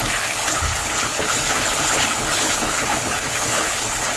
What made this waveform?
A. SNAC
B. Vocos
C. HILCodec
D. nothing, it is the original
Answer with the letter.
C